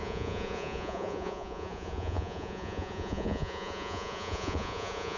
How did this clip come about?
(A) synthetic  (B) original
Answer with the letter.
A